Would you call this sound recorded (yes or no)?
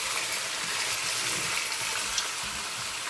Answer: yes